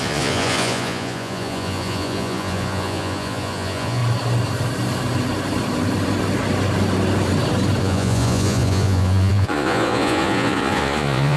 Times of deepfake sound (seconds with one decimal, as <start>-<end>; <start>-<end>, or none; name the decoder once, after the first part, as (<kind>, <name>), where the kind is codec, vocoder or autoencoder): 0.0-4.0 (vocoder, Vocos); 7.8-11.4

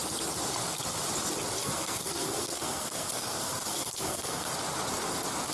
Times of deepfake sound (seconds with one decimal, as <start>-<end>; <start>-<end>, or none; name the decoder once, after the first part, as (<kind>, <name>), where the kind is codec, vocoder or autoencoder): 1.6-4.5 (codec, SNAC)

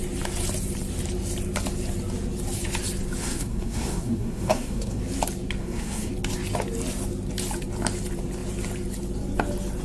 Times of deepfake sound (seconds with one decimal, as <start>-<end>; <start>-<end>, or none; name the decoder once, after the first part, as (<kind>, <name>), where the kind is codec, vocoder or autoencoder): 3.2-5.0 (codec, SNAC); 5.6-6.1

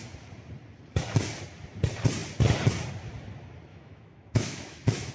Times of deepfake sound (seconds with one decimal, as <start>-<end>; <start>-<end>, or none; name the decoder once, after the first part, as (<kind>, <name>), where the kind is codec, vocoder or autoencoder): 3.7-5.1 (autoencoder, DAC-VAE)

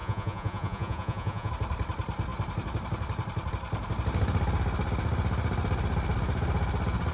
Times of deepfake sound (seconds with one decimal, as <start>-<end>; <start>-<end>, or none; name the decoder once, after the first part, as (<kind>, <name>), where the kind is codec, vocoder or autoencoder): 0.0-1.5 (vocoder, Vocos)

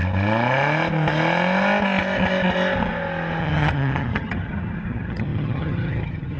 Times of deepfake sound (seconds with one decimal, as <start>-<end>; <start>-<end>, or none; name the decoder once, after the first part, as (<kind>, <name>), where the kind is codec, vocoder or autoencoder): 3.4-6.4 (vocoder, HiFi-GAN)